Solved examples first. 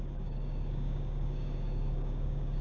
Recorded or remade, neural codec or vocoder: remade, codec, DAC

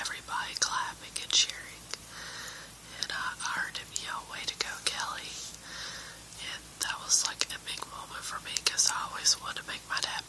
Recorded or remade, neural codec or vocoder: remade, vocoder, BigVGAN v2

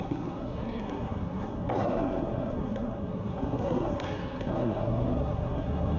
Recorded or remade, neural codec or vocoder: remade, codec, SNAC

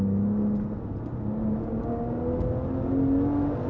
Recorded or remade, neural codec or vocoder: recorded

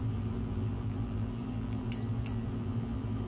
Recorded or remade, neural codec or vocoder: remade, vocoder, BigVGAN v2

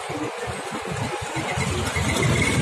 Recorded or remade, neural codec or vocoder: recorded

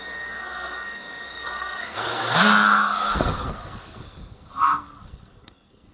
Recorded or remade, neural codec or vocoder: remade, codec, SNAC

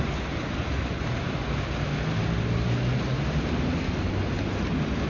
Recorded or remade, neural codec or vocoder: recorded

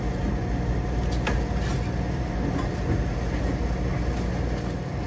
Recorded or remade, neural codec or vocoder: recorded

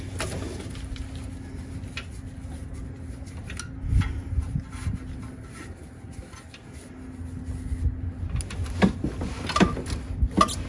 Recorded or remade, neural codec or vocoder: recorded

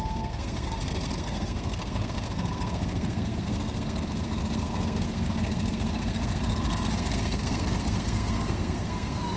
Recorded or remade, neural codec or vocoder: remade, codec, SNAC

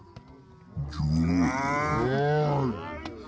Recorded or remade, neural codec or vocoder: recorded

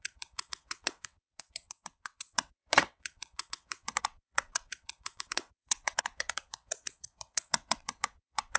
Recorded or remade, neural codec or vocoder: remade, vocoder, WaveNeXt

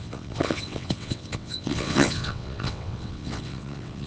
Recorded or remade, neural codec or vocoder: remade, vocoder, WaveNeXt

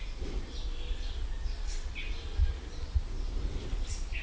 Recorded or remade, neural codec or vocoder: recorded